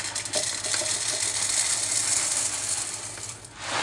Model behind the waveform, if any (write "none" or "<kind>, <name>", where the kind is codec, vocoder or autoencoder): none